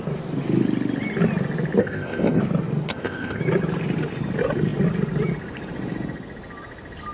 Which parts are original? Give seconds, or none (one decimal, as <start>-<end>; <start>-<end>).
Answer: 0.0-1.8; 2.4-2.9; 3.4-7.1